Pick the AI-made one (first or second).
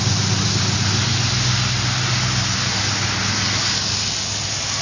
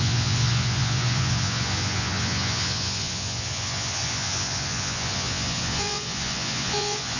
second